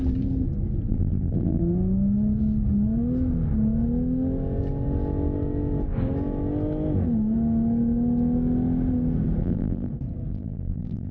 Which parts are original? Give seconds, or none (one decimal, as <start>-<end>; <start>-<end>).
0.0-0.9; 1.6-9.4; 9.9-10.3